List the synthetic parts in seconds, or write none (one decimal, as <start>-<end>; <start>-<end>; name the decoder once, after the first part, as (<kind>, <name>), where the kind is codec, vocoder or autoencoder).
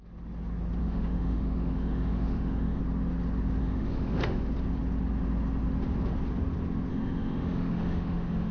0.8-2.8 (autoencoder, DAC-VAE); 3.6-4.5; 6.9-8.5